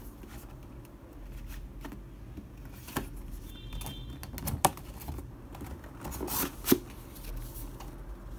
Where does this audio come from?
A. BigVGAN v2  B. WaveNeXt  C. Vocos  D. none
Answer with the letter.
D